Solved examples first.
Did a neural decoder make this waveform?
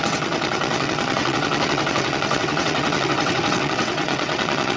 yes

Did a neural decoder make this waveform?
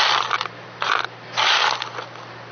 no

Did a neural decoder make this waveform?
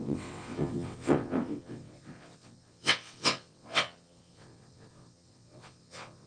yes